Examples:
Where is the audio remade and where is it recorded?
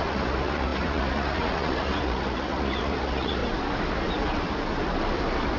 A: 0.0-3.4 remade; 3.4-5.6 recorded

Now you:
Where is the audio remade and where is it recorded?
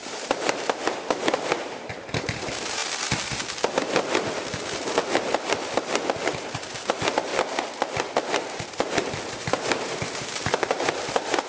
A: 0.0-2.8 remade; 2.8-6.3 recorded; 6.3-7.3 remade; 7.3-8.4 recorded; 8.4-11.5 remade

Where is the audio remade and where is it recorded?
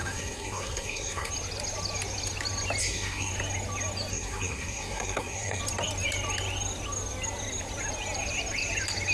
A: 0.0-1.3 remade; 1.3-2.8 recorded; 2.8-3.3 remade; 3.3-4.1 recorded; 4.1-5.6 remade; 5.6-9.1 recorded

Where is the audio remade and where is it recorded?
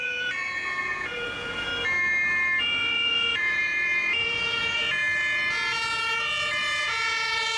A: 0.0-1.7 remade; 1.7-2.6 recorded; 2.6-5.0 remade; 5.0-6.6 recorded; 6.6-7.6 remade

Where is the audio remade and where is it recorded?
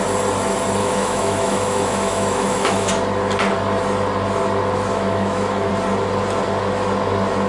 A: 0.0-0.8 recorded; 0.8-2.9 remade; 2.9-4.9 recorded; 4.9-5.7 remade; 5.7-7.5 recorded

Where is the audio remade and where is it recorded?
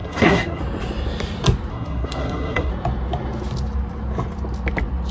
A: 0.0-0.6 remade; 0.6-1.7 recorded; 1.7-2.7 remade; 2.7-5.1 recorded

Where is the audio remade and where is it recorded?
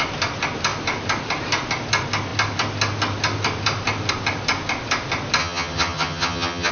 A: 0.0-5.4 recorded; 5.4-6.7 remade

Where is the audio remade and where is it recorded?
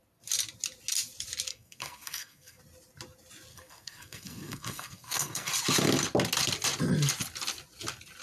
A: 0.0-1.5 recorded; 1.5-2.6 remade; 2.6-3.5 recorded; 3.5-5.5 remade; 5.5-8.2 recorded